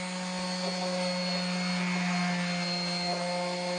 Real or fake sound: real